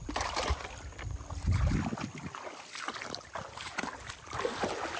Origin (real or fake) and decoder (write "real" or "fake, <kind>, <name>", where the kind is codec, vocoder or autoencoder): real